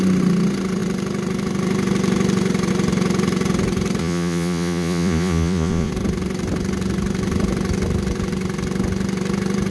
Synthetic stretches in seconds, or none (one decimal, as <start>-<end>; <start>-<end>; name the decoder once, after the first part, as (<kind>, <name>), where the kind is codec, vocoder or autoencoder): 4.0-5.9 (vocoder, Vocos)